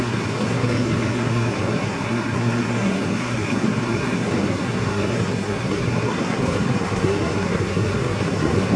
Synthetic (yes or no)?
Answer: yes